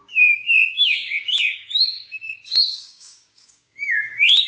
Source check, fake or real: fake